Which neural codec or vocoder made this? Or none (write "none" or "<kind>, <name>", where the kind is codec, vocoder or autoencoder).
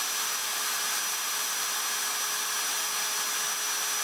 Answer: none